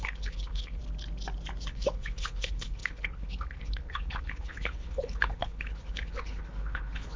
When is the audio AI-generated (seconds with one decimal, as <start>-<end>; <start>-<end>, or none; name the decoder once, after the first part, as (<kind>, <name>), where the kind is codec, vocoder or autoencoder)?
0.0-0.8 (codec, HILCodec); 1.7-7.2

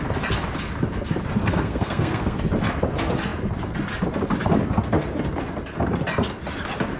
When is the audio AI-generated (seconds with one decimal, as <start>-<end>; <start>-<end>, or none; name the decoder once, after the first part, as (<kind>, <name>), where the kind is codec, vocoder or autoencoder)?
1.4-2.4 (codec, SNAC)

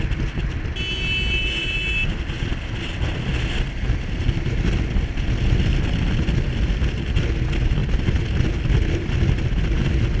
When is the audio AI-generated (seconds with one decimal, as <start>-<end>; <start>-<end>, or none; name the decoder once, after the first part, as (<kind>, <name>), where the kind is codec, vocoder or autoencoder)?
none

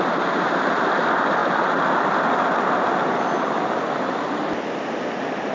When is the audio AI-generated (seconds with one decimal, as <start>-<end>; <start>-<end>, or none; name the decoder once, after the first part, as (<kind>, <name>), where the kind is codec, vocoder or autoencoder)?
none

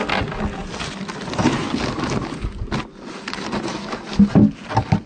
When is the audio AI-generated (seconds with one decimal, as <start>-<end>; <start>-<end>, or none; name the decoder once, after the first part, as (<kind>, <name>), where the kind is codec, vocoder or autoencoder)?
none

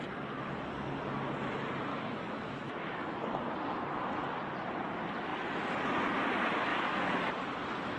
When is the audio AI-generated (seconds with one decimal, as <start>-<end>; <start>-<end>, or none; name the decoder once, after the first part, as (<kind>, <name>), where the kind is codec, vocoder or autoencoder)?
1.9-3.2 (autoencoder, DAC-VAE); 6.7-7.2

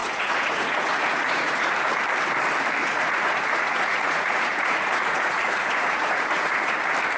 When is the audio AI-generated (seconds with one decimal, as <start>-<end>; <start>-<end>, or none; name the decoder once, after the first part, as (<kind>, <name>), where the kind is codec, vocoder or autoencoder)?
0.0-1.6 (vocoder, Vocos); 2.8-6.7

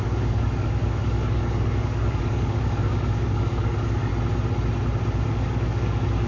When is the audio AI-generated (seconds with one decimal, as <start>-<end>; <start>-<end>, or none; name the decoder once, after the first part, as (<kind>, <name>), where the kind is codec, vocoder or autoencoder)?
0.0-4.1 (codec, DAC); 5.3-6.3